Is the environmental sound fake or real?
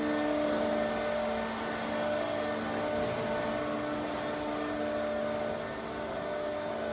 real